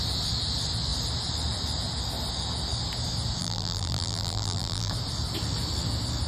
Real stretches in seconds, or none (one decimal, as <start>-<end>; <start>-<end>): 0.0-3.4; 4.9-6.3